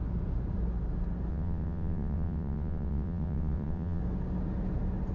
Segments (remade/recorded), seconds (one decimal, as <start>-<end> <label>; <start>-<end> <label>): 0.0-1.3 recorded; 1.3-4.0 remade; 4.0-5.1 recorded

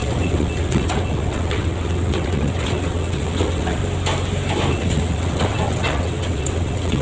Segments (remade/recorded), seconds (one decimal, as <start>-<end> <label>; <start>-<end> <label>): 0.0-3.8 remade; 3.8-4.7 recorded; 4.7-7.0 remade

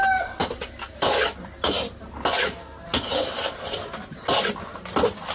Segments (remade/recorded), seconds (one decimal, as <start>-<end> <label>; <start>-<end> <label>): 0.0-5.3 recorded

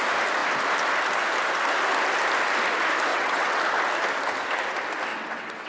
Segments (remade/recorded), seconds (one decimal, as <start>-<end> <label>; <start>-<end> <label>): 0.0-3.1 recorded; 3.1-3.6 remade; 3.6-5.1 recorded; 5.1-5.7 remade

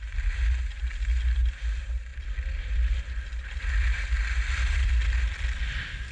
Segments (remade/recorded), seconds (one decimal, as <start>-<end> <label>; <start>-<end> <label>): 0.0-6.1 recorded

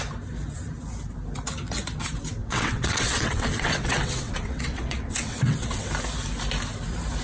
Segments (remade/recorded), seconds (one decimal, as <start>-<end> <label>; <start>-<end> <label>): 0.0-2.4 recorded; 2.4-5.9 remade; 5.9-7.2 recorded